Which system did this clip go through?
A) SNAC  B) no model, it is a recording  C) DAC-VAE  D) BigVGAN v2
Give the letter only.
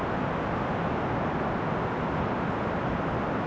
B